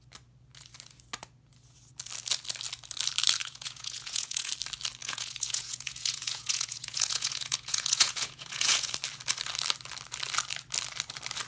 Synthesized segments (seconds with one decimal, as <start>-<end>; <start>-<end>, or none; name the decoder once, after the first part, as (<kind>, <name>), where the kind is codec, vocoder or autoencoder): 3.4-4.5 (vocoder, Vocos); 5.0-8.9